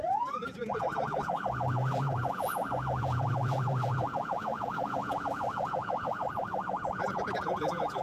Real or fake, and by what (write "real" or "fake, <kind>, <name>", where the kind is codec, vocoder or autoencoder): fake, vocoder, Vocos